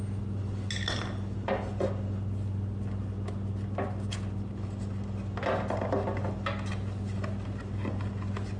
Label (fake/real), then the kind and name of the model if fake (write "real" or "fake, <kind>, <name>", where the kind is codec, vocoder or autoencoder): real